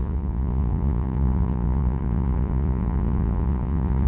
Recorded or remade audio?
remade